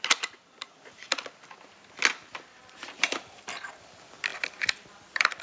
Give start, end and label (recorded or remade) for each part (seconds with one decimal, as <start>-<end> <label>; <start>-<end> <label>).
0.0-2.6 recorded; 2.6-3.6 remade; 3.6-4.3 recorded; 4.3-5.4 remade